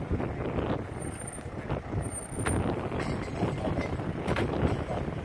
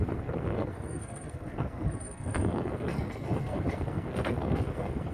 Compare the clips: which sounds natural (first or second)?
first